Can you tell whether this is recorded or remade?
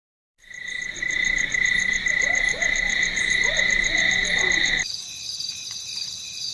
remade